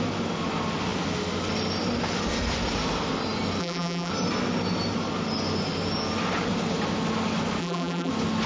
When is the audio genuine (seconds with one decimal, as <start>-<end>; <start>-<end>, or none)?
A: 0.0-3.6; 4.1-7.6; 8.1-8.5